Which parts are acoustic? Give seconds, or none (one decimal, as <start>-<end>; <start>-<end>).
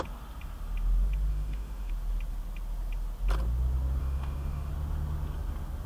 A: 0.0-1.3; 1.9-4.0; 4.7-5.9